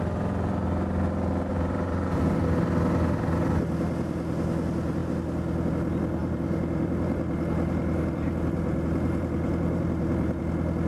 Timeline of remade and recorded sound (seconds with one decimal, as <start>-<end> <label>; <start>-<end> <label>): 0.0-1.5 recorded; 1.5-2.3 remade; 2.3-6.2 recorded; 6.2-10.4 remade; 10.4-10.9 recorded